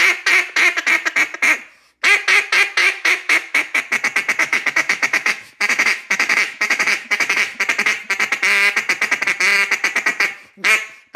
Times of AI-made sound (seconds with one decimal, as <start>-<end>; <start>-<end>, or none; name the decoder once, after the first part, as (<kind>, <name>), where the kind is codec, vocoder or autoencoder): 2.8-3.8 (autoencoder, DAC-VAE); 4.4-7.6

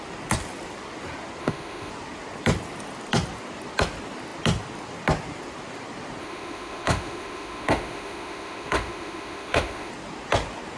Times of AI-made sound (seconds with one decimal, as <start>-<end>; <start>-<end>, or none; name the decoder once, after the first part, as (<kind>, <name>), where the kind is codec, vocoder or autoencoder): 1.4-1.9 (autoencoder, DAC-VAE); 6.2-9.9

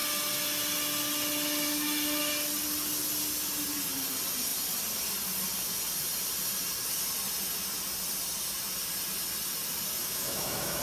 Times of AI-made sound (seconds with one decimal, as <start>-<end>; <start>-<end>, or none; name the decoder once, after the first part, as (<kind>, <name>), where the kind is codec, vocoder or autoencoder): 10.0-10.8 (autoencoder, DAC-VAE)

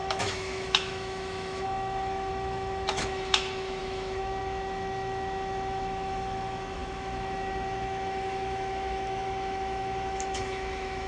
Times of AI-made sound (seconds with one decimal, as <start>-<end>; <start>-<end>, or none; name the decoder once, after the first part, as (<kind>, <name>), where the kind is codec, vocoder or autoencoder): 0.0-11.1 (autoencoder, DAC-VAE)

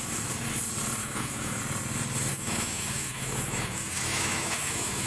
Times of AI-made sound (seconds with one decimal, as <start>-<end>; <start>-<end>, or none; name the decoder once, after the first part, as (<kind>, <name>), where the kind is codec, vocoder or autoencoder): 1.0-1.6 (autoencoder, DAC-VAE); 2.3-5.1

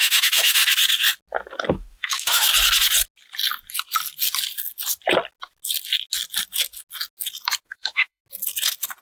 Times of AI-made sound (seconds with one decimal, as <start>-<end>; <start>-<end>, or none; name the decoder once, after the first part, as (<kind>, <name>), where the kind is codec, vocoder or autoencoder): 0.0-0.6 (autoencoder, DAC-VAE); 1.7-2.5; 7.6-8.2